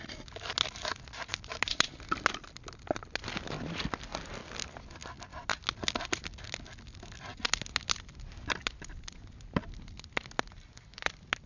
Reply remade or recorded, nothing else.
recorded